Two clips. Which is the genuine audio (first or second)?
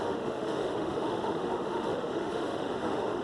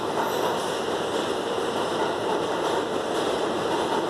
second